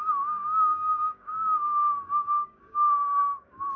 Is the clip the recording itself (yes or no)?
no